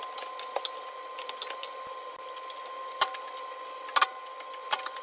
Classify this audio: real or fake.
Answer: real